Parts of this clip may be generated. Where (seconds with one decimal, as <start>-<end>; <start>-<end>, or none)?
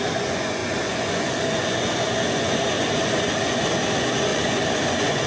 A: 0.0-5.3